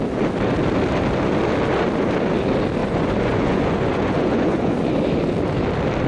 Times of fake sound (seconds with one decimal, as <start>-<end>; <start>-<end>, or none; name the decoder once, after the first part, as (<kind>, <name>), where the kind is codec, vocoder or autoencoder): 2.8-4.9 (vocoder, Vocos)